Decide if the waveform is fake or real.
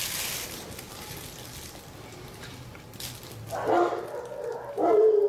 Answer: real